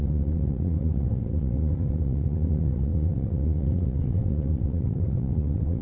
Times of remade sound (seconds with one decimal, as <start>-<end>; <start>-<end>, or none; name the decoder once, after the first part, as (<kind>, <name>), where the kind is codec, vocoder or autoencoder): 0.0-5.8 (vocoder, WaveNeXt)